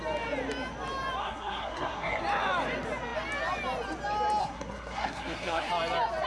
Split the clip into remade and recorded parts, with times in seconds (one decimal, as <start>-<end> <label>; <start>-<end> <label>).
0.0-1.2 recorded; 1.2-2.2 remade; 2.2-4.4 recorded; 4.4-5.7 remade; 5.7-6.3 recorded